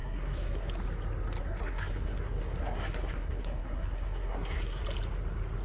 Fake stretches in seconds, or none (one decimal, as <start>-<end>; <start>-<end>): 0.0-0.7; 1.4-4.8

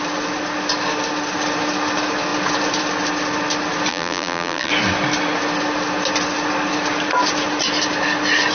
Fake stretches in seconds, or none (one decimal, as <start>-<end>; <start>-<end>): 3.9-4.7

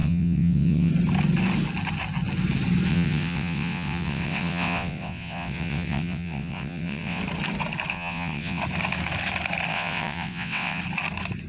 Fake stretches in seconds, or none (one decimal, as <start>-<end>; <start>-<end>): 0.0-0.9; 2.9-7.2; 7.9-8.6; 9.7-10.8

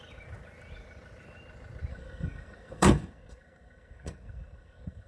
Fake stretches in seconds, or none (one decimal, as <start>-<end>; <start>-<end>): 1.9-5.1